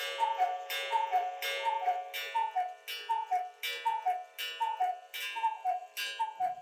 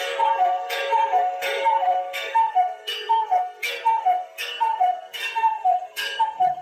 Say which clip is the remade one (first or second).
second